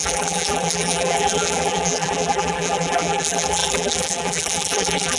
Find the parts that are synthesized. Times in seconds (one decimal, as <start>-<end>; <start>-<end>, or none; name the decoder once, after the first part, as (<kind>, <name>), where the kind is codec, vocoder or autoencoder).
0.0-5.2 (vocoder, BigVGAN v2)